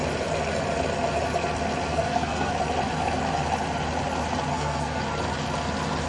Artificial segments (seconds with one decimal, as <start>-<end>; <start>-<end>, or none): 1.9-2.5; 4.5-5.0